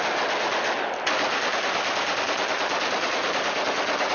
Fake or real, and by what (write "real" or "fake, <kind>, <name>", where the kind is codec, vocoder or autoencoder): real